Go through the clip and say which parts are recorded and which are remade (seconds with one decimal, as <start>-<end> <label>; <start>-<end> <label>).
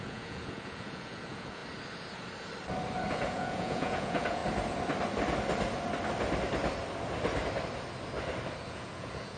0.0-1.6 remade; 1.6-3.1 recorded; 3.1-4.4 remade; 4.4-8.7 recorded; 8.7-9.4 remade